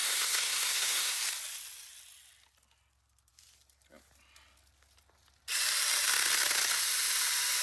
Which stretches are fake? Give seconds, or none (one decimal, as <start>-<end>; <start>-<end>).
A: 0.0-1.2